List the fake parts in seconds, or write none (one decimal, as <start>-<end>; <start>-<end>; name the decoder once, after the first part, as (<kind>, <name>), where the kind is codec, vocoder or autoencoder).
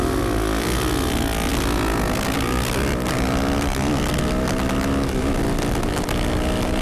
none